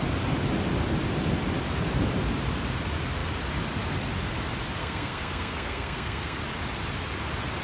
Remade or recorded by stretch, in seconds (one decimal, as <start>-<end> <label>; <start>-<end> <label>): 0.0-4.8 recorded; 4.8-6.4 remade; 6.4-7.6 recorded